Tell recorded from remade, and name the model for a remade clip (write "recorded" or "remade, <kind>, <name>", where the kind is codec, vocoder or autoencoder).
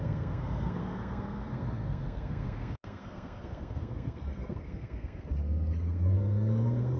remade, codec, SNAC